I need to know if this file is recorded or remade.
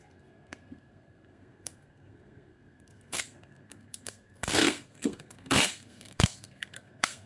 remade